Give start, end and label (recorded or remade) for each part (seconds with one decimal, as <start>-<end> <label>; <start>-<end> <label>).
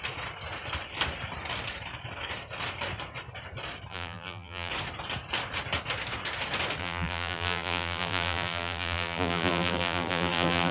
0.0-3.9 recorded; 3.9-4.7 remade; 4.7-6.8 recorded; 6.8-10.7 remade